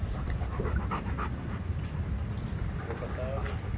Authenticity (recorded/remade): recorded